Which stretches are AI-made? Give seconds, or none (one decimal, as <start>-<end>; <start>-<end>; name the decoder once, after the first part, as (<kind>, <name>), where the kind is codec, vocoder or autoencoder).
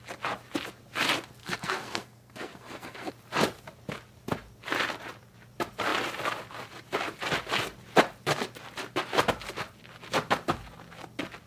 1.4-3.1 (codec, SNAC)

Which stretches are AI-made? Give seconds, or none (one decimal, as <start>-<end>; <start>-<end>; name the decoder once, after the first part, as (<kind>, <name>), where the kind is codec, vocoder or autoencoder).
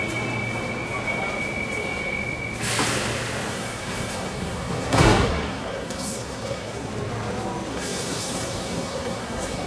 3.5-6.9 (codec, SNAC); 7.7-9.7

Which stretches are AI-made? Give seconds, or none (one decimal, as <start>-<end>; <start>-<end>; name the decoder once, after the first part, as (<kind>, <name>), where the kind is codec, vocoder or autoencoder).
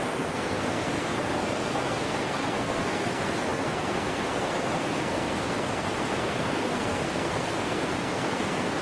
0.0-8.8 (codec, SNAC)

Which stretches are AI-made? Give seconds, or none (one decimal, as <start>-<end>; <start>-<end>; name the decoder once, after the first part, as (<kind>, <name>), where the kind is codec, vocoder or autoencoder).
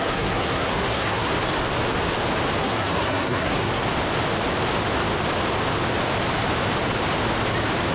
0.0-1.3 (codec, SNAC); 2.6-3.8